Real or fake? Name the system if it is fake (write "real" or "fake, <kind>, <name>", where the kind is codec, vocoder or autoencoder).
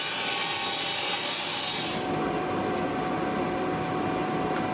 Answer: real